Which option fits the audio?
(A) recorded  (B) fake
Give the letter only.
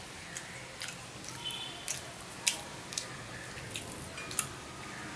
A